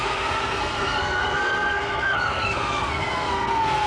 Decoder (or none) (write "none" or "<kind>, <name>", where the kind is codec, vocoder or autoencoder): codec, SNAC